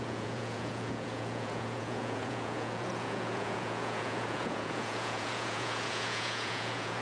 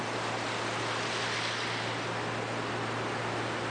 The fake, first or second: first